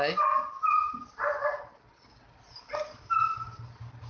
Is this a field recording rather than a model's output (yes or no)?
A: yes